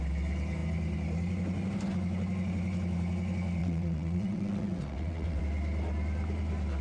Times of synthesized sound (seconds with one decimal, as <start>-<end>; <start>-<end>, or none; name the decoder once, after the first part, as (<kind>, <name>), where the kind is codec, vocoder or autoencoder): 3.6-5.4 (vocoder, WaveNeXt)